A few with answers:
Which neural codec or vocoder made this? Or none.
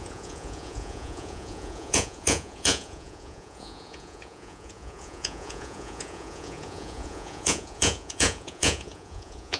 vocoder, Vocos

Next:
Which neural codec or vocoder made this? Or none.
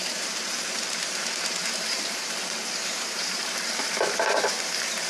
vocoder, BigVGAN v2